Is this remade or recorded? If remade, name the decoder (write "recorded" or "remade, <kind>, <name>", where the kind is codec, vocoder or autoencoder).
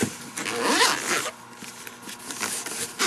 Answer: recorded